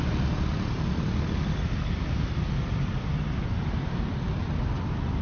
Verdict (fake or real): real